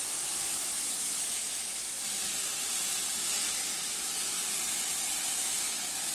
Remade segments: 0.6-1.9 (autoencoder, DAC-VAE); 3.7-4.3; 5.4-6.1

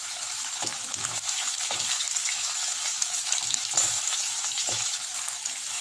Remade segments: 0.0-5.8 (autoencoder, DAC-VAE)

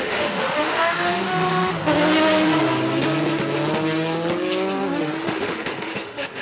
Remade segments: 0.0-1.8 (autoencoder, DAC-VAE); 5.0-6.4